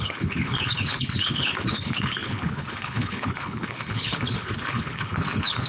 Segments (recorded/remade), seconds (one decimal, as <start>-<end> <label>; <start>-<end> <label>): 0.0-5.7 remade

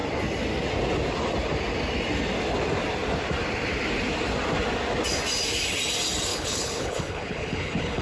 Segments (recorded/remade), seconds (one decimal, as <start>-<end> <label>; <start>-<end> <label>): 0.0-6.3 recorded; 6.3-8.0 remade

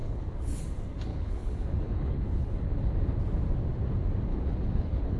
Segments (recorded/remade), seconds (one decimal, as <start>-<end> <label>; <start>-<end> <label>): 0.0-0.6 remade; 0.6-1.1 recorded; 1.1-3.2 remade; 3.2-4.3 recorded; 4.3-5.2 remade

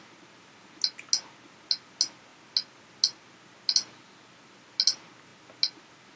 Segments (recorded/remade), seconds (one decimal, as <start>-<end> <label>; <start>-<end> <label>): 0.0-6.2 recorded

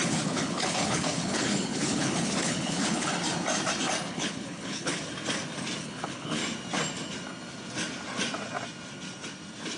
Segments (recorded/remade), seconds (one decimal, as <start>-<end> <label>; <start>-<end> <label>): 0.0-3.1 remade; 3.1-4.1 recorded; 4.1-5.0 remade; 5.0-5.8 recorded; 5.8-6.4 remade; 6.4-9.8 recorded